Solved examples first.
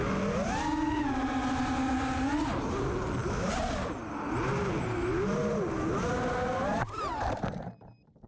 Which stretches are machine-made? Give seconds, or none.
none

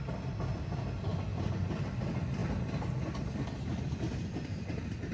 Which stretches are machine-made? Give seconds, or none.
1.3-2.0 (vocoder, BigVGAN v2)

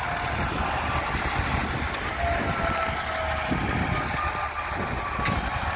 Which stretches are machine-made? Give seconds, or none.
none

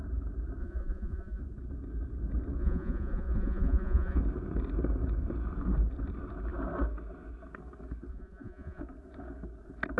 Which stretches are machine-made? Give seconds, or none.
0.6-1.4 (vocoder, Vocos); 2.6-4.2; 8.1-8.8